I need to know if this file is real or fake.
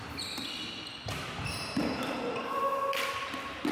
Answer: real